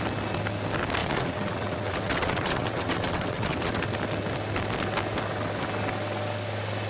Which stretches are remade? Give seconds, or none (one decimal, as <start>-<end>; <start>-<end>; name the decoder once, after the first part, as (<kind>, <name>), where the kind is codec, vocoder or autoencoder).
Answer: 1.0-3.8 (vocoder, WaveNeXt)